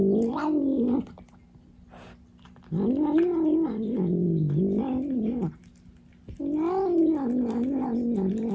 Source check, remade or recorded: recorded